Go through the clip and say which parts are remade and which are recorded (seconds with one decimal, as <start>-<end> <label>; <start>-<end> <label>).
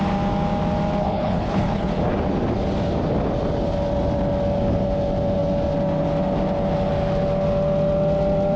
0.0-1.0 recorded; 1.0-1.9 remade; 1.9-8.6 recorded